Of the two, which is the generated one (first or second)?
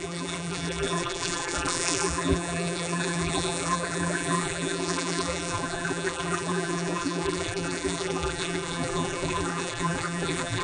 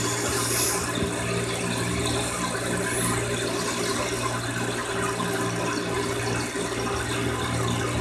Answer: first